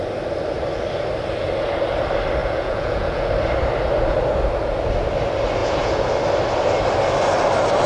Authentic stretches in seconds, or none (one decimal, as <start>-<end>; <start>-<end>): 0.0-2.4; 3.3-5.6; 6.1-7.9